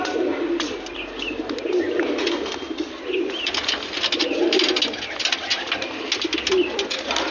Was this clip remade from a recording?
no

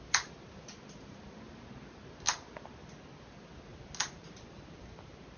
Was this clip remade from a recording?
no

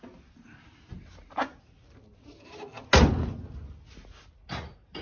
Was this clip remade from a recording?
no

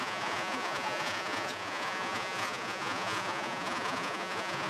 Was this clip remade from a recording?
yes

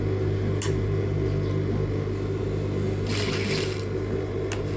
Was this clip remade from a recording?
no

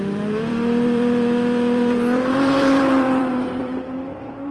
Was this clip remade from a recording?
yes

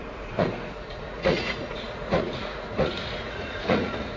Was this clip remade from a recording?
yes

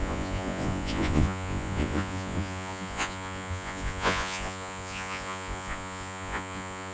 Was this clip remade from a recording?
yes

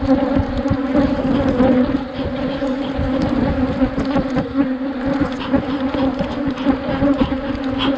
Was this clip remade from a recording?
no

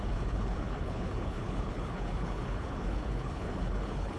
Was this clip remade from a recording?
yes